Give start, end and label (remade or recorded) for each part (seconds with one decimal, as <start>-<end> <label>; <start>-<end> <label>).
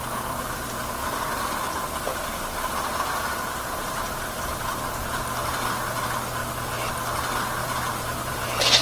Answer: 0.0-2.1 recorded; 2.1-4.8 remade; 4.8-7.6 recorded; 7.6-8.8 remade